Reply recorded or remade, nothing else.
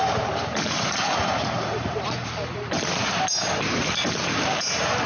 remade